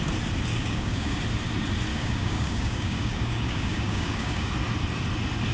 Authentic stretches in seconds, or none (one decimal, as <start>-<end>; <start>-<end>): 0.0-0.5; 1.2-1.9; 4.5-5.5